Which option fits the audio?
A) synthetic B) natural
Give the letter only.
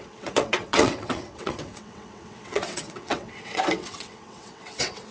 A